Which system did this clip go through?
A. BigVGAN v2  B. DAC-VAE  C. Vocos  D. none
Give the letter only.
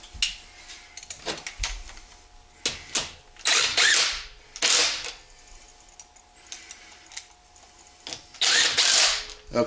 D